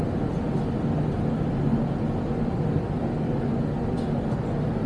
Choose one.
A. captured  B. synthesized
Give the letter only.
A